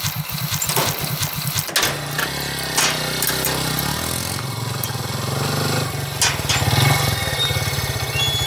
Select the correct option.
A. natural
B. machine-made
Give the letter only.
A